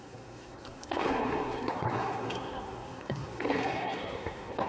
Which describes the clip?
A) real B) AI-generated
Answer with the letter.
B